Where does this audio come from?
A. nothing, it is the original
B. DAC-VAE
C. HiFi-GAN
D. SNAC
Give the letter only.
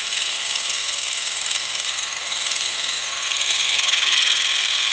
D